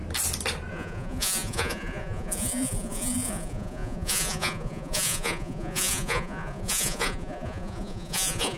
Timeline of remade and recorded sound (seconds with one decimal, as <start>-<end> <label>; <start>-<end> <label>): 0.0-0.7 recorded; 0.7-8.6 remade